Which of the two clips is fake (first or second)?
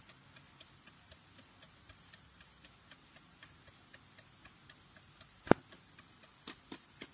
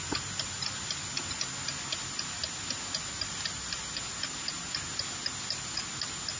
first